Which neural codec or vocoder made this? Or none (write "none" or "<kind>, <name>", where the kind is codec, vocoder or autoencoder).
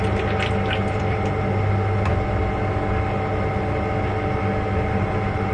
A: none